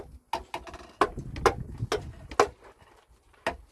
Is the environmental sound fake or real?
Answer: real